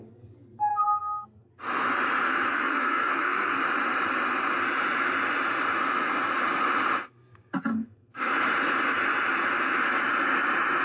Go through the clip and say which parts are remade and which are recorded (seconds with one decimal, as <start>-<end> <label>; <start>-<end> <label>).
0.0-0.7 recorded; 0.7-1.5 remade; 1.5-2.5 recorded; 2.5-3.6 remade; 3.6-7.7 recorded; 7.7-8.3 remade; 8.3-10.8 recorded